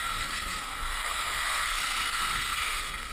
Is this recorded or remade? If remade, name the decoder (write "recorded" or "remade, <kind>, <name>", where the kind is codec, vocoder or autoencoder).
remade, codec, SNAC